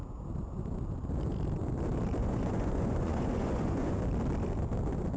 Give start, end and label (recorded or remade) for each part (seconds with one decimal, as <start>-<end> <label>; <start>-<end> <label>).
0.0-2.2 recorded; 2.2-4.0 remade; 4.0-5.2 recorded